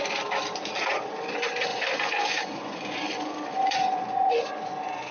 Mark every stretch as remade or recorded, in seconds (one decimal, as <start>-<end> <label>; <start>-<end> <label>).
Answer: 0.0-1.7 recorded; 1.7-5.1 remade